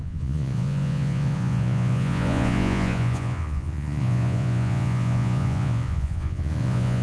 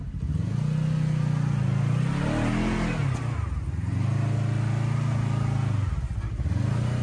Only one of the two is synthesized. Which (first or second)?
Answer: first